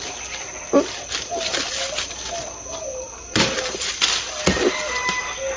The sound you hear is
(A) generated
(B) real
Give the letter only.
B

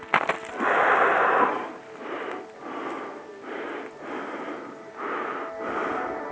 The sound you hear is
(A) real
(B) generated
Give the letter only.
A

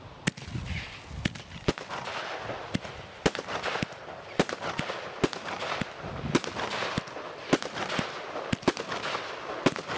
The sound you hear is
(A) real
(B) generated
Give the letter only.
A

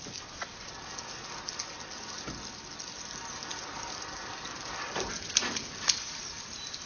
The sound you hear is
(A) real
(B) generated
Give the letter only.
A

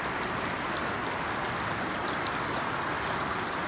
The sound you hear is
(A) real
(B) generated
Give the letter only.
A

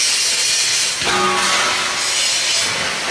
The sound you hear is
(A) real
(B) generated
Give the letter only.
A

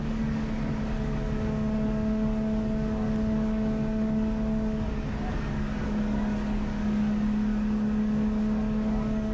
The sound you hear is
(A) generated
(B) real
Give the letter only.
A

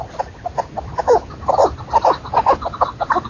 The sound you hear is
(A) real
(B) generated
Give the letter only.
A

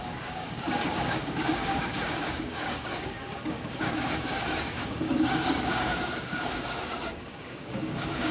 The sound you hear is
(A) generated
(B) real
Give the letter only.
A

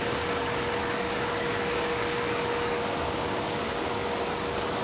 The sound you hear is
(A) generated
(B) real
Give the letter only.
A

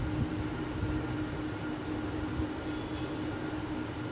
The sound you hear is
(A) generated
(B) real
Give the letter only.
B